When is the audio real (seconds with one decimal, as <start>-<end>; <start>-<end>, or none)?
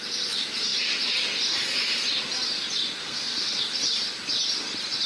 0.0-3.0; 3.6-5.1